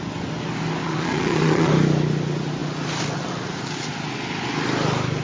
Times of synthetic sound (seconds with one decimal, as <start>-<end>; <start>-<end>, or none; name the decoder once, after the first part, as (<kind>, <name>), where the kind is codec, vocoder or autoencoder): 0.8-1.7 (vocoder, Vocos)